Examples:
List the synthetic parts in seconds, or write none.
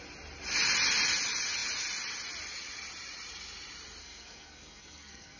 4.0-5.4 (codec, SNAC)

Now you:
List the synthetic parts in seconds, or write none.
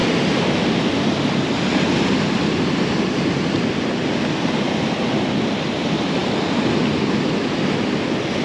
none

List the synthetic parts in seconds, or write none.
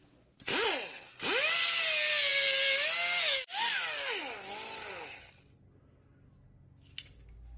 none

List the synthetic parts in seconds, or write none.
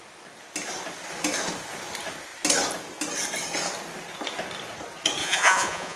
5.2-6.0 (vocoder, Vocos)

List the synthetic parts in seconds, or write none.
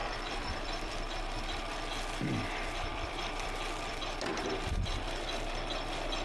0.0-1.2 (vocoder, BigVGAN v2); 2.9-4.0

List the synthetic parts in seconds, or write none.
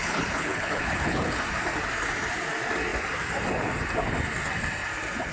0.0-1.4 (codec, HILCodec)